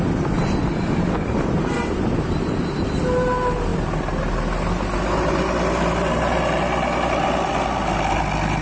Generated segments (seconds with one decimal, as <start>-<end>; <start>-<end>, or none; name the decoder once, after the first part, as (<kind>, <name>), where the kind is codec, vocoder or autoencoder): none